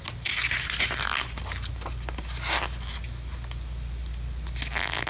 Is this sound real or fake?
real